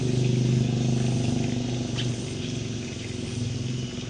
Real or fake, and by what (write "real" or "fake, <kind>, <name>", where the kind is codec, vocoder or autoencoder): real